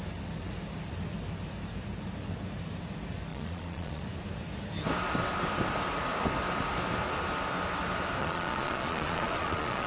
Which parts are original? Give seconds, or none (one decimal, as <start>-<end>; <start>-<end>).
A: 0.0-3.3; 4.0-8.2